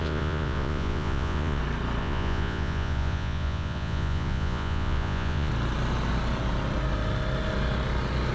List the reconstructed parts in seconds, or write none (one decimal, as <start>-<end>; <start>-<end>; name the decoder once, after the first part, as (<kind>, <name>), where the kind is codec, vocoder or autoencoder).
0.0-1.6 (vocoder, Vocos); 2.0-5.5